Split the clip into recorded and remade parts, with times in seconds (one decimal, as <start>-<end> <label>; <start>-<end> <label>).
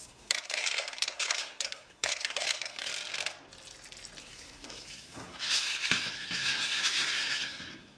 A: 0.0-2.9 remade; 2.9-4.2 recorded; 4.2-8.0 remade